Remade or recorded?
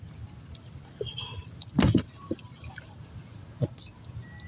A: recorded